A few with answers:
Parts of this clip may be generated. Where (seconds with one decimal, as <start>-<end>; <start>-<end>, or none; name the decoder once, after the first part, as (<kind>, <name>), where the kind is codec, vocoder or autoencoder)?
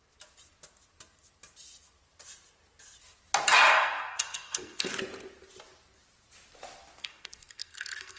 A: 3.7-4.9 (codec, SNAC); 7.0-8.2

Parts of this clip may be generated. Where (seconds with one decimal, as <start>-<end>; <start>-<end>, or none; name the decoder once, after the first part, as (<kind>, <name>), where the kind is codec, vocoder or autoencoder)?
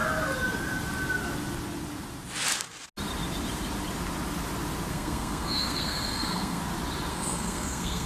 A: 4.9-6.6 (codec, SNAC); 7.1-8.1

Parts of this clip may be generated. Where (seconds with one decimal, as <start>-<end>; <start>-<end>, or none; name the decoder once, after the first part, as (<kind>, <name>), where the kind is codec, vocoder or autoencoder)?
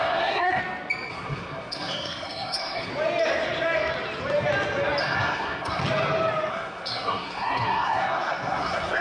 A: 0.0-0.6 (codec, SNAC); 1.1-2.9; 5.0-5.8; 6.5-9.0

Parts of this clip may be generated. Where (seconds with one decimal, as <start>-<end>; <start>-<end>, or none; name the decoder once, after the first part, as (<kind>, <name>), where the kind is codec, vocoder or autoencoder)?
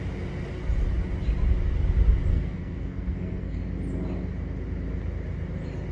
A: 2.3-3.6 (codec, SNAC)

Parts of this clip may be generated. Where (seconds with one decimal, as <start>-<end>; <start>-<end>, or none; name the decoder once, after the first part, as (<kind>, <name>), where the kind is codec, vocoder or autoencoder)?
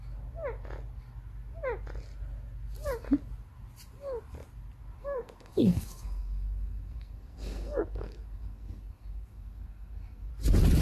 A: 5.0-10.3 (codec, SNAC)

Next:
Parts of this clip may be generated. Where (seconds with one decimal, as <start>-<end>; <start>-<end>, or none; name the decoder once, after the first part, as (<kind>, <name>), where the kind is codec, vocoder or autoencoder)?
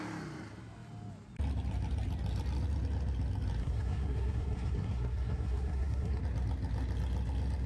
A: 3.6-6.2 (codec, SNAC)